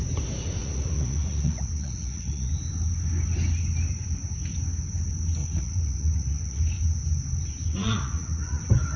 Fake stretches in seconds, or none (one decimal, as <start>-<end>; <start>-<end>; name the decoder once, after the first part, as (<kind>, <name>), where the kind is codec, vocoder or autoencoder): 0.6-2.5 (vocoder, Vocos); 5.4-6.6; 7.7-8.6